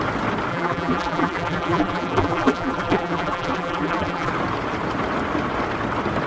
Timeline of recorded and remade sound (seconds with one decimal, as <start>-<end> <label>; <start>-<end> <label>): 0.0-0.5 recorded; 0.5-4.3 remade; 4.3-6.3 recorded